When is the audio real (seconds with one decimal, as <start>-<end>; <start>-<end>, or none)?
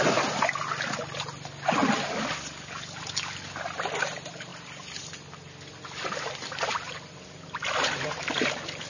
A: 0.0-8.9